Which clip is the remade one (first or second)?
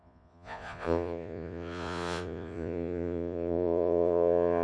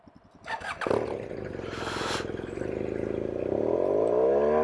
first